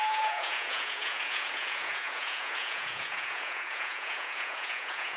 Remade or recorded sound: remade